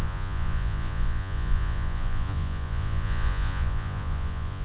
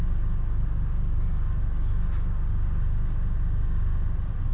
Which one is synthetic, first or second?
first